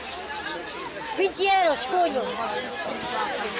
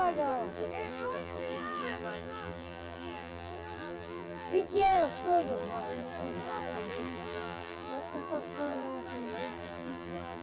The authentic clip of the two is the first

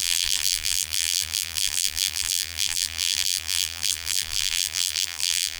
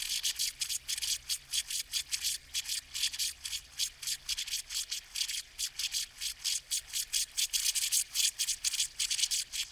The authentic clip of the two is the second